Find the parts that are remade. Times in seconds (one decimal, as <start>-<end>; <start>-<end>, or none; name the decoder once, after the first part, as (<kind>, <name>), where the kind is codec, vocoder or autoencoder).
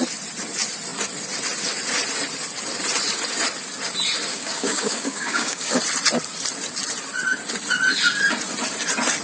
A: 4.3-5.8 (codec, DAC)